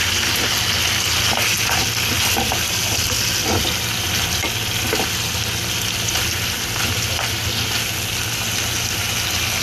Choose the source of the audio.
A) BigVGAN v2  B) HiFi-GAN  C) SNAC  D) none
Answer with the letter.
D